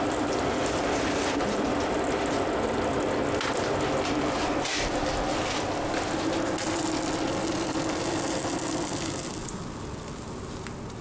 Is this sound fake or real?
real